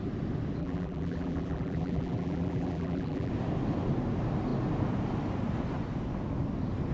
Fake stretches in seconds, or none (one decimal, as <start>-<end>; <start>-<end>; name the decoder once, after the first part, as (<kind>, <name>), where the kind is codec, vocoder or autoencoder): 0.6-3.3 (vocoder, BigVGAN v2)